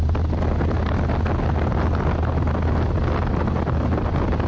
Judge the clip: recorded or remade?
recorded